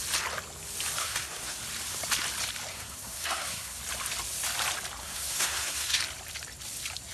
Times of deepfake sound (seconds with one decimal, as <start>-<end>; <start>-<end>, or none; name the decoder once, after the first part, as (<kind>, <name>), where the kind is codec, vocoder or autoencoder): 1.0-1.6 (codec, SNAC); 2.7-3.8; 5.0-6.0